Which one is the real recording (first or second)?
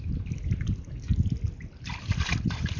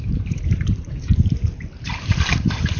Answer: first